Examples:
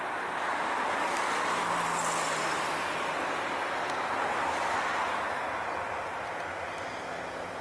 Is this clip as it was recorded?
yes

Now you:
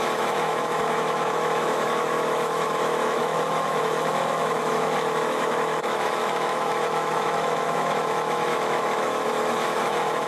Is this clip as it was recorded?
no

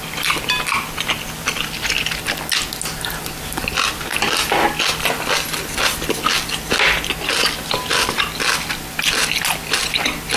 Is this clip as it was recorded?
yes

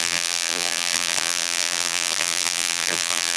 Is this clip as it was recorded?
no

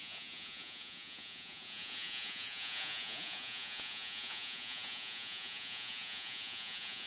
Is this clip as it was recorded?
no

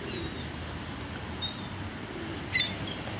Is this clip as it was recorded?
yes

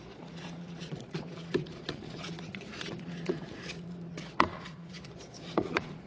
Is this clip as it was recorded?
no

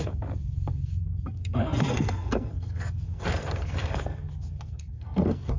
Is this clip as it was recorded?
no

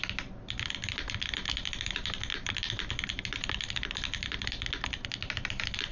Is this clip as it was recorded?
yes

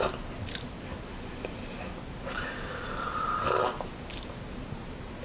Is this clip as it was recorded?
yes